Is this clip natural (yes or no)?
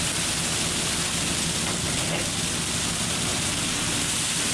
yes